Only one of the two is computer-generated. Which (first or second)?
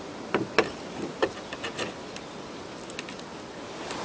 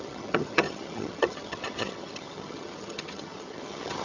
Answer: second